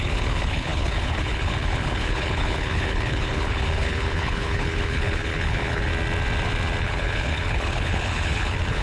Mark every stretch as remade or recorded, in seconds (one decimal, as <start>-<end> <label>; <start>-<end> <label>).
0.0-5.9 remade; 5.9-6.8 recorded; 6.8-8.8 remade